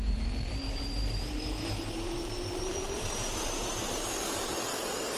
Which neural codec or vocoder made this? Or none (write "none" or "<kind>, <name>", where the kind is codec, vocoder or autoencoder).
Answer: vocoder, BigVGAN v2